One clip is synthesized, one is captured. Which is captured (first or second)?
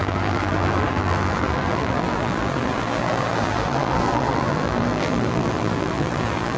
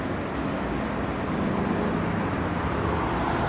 second